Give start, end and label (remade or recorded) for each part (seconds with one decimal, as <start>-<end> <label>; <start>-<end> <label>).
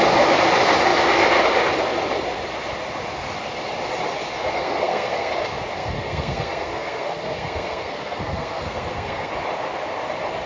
0.0-4.5 recorded; 4.5-5.3 remade; 5.3-5.7 recorded; 5.7-9.3 remade; 9.3-10.5 recorded